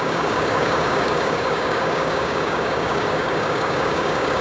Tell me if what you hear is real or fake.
fake